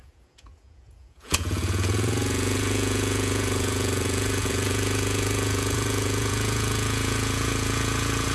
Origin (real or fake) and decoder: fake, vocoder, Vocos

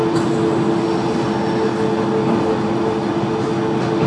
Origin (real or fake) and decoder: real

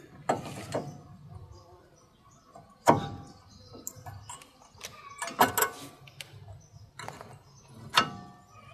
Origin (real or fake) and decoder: real